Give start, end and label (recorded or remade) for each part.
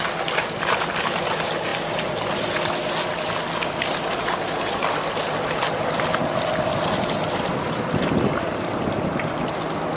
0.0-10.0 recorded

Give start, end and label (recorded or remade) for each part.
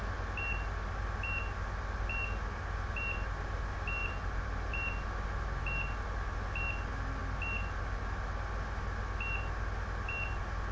0.0-4.0 recorded; 4.0-4.7 remade; 4.7-10.7 recorded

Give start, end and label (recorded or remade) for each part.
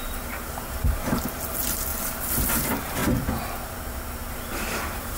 0.0-3.0 remade; 3.0-4.3 recorded; 4.3-5.2 remade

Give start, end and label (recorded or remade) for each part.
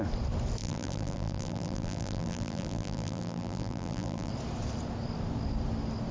0.0-0.6 recorded; 0.6-4.3 remade; 4.3-6.1 recorded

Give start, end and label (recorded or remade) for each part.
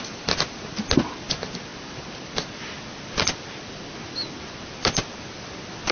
0.0-1.7 recorded; 1.7-5.2 remade; 5.2-5.9 recorded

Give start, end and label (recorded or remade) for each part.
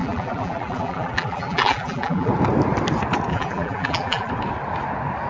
0.0-2.3 remade; 2.3-3.3 recorded; 3.3-4.3 remade; 4.3-5.3 recorded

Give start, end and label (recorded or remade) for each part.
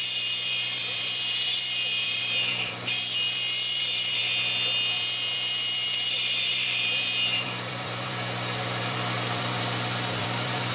0.0-4.2 remade; 4.2-4.9 recorded; 4.9-10.7 remade